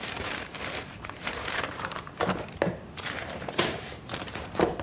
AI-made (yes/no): yes